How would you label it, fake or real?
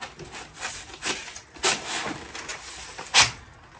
real